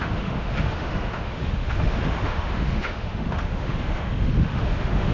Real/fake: fake